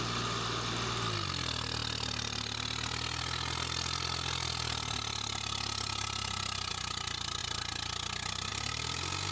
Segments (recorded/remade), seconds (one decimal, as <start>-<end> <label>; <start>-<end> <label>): 0.0-9.3 recorded